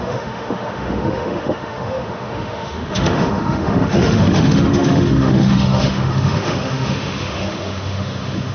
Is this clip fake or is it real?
fake